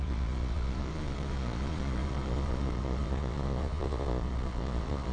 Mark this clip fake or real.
fake